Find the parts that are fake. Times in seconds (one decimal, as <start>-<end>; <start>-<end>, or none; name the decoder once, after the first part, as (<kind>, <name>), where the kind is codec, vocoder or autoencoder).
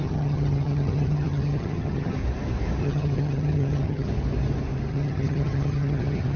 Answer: 0.0-2.2 (vocoder, HiFi-GAN); 2.8-4.1; 4.9-6.4